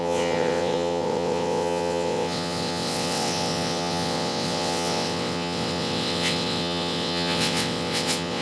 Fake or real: fake